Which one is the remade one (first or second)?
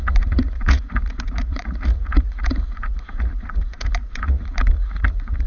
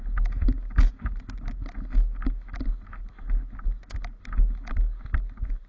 first